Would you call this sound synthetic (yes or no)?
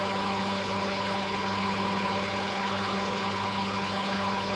yes